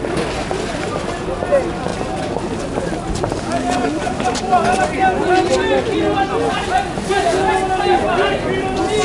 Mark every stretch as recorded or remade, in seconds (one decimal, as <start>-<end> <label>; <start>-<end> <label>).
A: 0.0-9.0 recorded